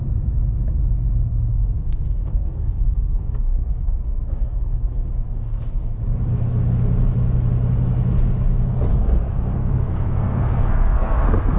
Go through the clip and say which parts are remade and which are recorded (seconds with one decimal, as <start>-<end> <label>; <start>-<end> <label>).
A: 0.0-1.5 recorded; 1.5-6.0 remade; 6.0-8.9 recorded; 8.9-11.6 remade